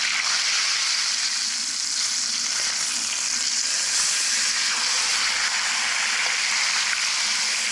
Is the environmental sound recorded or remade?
recorded